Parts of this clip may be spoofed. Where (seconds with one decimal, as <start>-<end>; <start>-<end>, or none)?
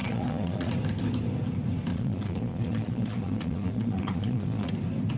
0.0-0.7; 1.9-4.7